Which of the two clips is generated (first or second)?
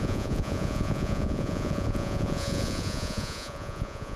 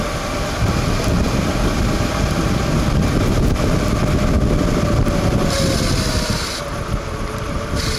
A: first